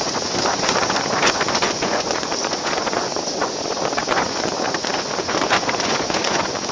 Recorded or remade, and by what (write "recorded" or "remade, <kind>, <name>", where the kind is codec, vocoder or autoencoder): remade, vocoder, Vocos